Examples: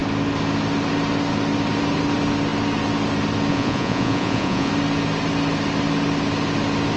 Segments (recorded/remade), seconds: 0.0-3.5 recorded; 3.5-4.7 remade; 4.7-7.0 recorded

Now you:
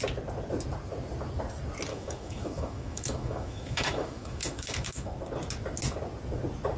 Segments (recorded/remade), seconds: 0.0-1.9 recorded; 1.9-5.2 remade; 5.2-6.8 recorded

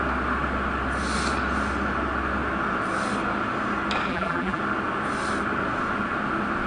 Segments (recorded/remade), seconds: 0.0-4.1 recorded; 4.1-4.6 remade; 4.6-6.7 recorded

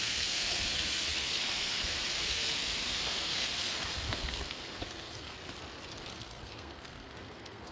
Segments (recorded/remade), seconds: 0.0-5.4 remade; 5.4-6.1 recorded; 6.1-7.7 remade

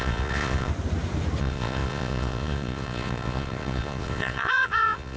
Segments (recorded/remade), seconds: 0.0-0.7 remade; 0.7-1.4 recorded; 1.4-5.2 remade

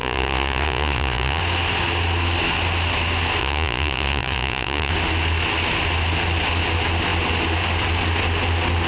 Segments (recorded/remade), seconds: 0.0-1.4 remade; 1.4-3.4 recorded; 3.4-4.9 remade; 4.9-8.9 recorded

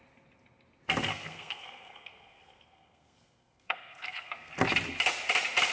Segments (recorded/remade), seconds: 0.0-1.1 recorded; 1.1-4.5 remade; 4.5-5.7 recorded